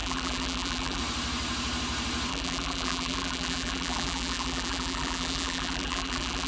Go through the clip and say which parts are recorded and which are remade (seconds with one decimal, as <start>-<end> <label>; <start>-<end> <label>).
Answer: 0.0-1.0 remade; 1.0-2.3 recorded; 2.3-6.5 remade